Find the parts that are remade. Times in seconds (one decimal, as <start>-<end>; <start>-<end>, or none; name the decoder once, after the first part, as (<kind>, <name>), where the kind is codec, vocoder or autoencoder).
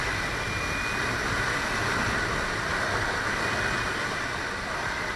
none